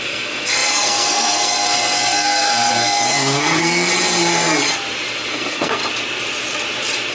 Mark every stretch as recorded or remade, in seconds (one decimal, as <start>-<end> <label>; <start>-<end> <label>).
0.0-3.9 remade; 3.9-5.3 recorded; 5.3-5.8 remade; 5.8-7.1 recorded